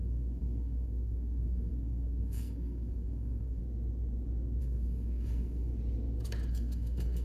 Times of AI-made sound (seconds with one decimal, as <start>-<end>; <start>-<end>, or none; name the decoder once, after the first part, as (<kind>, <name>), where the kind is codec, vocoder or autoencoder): 0.0-3.6 (codec, SNAC); 4.6-5.7; 6.5-7.2